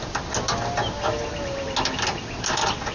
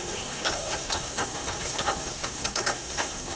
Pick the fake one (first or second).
second